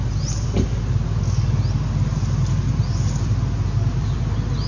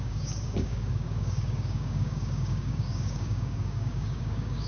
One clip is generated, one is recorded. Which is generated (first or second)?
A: second